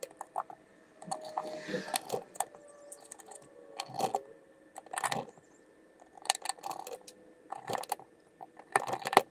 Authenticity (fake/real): real